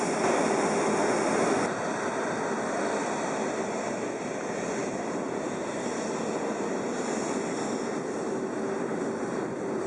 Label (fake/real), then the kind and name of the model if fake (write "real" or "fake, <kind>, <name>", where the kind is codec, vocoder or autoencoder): real